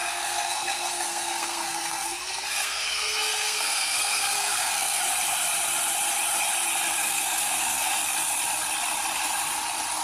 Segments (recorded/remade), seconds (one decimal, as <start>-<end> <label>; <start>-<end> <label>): 0.0-5.0 remade; 5.0-7.0 recorded; 7.0-7.9 remade; 7.9-10.0 recorded